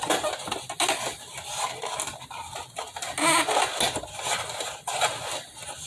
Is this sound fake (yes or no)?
no